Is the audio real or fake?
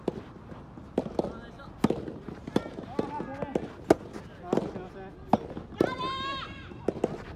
real